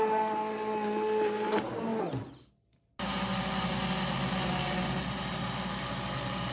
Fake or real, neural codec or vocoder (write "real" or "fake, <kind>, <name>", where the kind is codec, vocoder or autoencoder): real